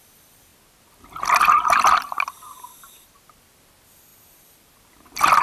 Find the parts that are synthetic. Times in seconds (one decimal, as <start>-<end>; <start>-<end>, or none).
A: none